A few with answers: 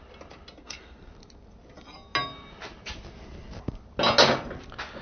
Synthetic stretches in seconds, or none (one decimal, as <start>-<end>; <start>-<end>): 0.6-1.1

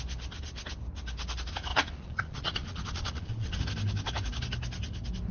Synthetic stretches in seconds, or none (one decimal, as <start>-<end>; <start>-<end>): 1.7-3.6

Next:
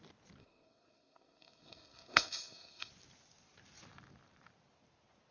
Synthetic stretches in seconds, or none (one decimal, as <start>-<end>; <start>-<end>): 0.4-2.9